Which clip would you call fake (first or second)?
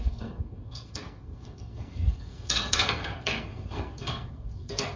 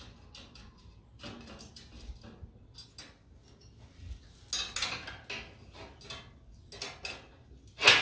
first